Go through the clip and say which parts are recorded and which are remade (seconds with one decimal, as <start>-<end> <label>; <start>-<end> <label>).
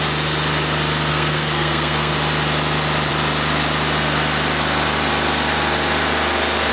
0.0-1.1 recorded; 1.1-2.1 remade; 2.1-6.7 recorded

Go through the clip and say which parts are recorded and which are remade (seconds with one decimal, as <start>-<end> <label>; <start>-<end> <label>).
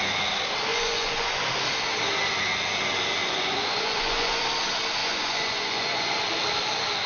0.0-0.7 recorded; 0.7-1.5 remade; 1.5-3.2 recorded; 3.2-4.4 remade; 4.4-5.0 recorded; 5.0-6.1 remade; 6.1-7.1 recorded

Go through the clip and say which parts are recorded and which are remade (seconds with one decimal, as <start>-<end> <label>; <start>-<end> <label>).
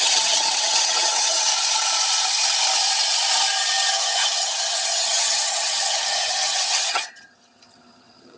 0.0-1.5 remade; 1.5-3.9 recorded; 3.9-8.4 remade